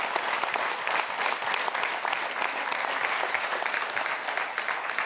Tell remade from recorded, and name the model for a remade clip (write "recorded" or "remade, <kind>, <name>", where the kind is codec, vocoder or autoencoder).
recorded